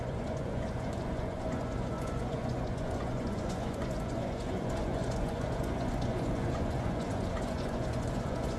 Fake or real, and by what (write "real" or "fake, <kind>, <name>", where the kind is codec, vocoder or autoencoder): fake, vocoder, Vocos